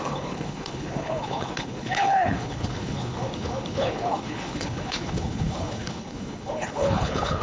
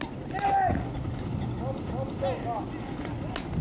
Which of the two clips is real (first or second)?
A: second